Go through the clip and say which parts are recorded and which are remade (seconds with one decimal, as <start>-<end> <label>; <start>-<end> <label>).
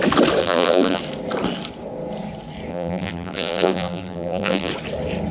0.0-0.4 recorded; 0.4-1.0 remade; 1.0-2.7 recorded; 2.7-4.7 remade; 4.7-5.3 recorded